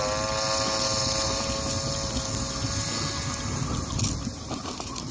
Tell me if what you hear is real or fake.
real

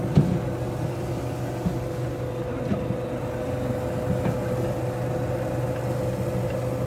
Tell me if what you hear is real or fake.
real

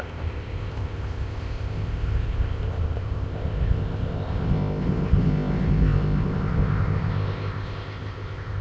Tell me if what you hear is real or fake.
fake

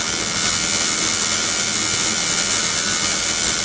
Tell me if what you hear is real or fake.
real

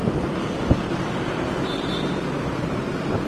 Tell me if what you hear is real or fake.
fake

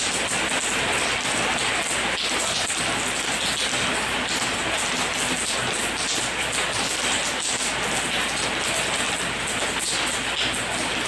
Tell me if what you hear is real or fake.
real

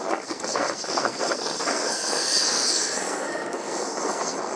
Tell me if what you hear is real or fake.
fake